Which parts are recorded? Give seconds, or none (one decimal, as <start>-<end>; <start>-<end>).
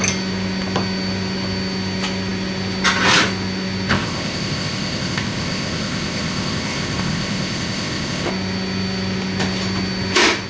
0.0-3.9; 8.3-10.5